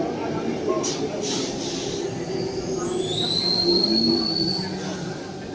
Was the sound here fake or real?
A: real